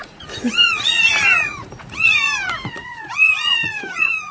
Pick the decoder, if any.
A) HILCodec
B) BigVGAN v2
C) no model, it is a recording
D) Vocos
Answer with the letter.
D